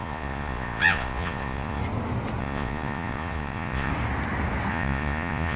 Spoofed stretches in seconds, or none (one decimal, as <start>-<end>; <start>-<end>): 0.0-1.8; 2.4-3.9; 4.7-5.6